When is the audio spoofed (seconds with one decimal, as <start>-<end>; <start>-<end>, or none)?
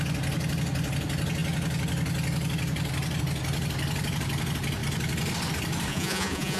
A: 5.9-6.6